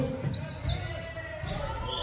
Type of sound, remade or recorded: recorded